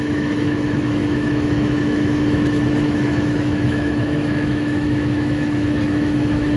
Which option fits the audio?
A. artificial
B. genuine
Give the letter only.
A